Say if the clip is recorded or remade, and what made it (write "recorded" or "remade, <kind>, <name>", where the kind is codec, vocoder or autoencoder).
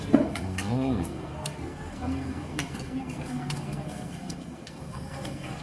remade, codec, SNAC